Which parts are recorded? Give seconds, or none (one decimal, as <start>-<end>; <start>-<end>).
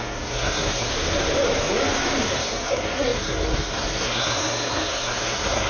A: 0.9-2.4